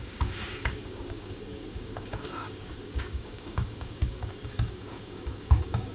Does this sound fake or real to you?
fake